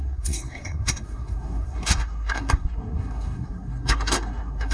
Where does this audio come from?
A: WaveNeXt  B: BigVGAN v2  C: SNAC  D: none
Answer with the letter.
C